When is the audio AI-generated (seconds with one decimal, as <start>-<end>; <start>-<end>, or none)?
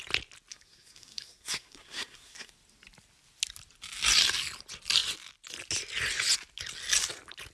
0.5-2.5